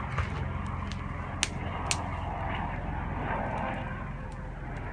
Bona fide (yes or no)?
yes